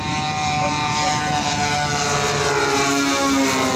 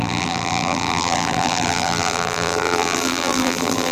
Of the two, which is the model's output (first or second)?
second